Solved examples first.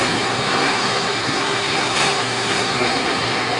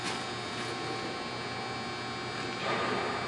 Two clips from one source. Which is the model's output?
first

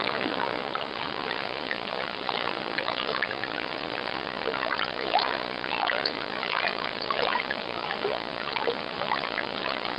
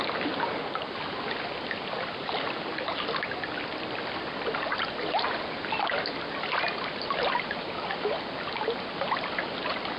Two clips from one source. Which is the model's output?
first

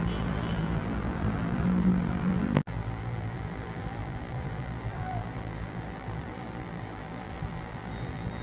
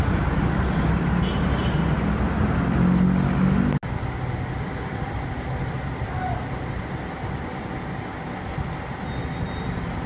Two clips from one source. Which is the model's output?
first